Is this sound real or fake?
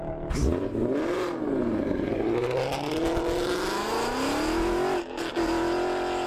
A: real